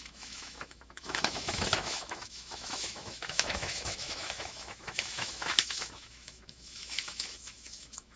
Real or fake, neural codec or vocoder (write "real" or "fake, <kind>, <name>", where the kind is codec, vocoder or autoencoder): fake, autoencoder, DAC-VAE